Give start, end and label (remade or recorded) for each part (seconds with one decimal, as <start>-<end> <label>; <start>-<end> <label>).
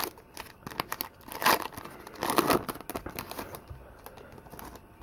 0.0-5.0 recorded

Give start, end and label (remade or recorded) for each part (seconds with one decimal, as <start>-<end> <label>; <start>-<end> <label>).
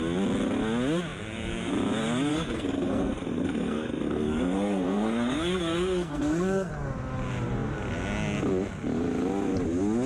0.0-2.3 recorded; 2.3-6.7 remade; 6.7-10.1 recorded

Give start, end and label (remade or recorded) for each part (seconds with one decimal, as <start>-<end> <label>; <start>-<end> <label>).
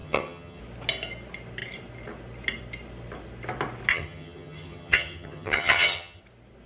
0.0-0.6 remade; 0.6-3.9 recorded; 3.9-6.2 remade; 6.2-6.7 recorded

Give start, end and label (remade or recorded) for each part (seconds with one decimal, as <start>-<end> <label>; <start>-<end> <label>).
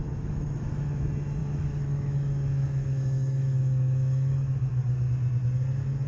0.0-1.0 remade; 1.0-1.4 recorded; 1.4-5.1 remade; 5.1-6.1 recorded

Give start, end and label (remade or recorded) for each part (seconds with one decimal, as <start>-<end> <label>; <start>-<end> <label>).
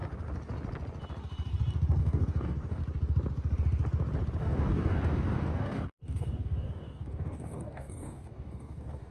0.0-2.0 recorded; 2.0-2.8 remade; 2.8-4.4 recorded; 4.4-9.1 remade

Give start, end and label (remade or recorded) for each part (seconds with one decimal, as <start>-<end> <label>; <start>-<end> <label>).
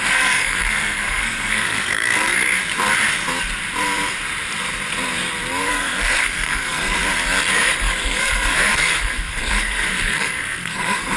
0.0-2.6 remade; 2.6-5.6 recorded; 5.6-7.0 remade; 7.0-7.5 recorded; 7.5-11.2 remade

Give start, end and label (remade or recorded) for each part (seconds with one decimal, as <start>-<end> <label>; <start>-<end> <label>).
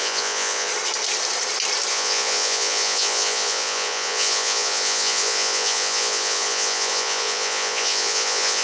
0.0-0.7 remade; 0.7-1.9 recorded; 1.9-8.6 remade